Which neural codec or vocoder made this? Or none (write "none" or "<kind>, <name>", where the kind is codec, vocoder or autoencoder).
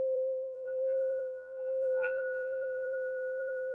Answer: vocoder, BigVGAN v2